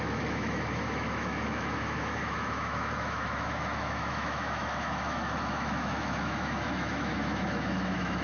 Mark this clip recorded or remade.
remade